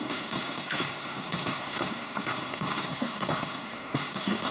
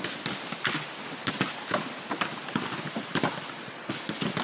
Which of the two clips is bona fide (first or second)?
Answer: second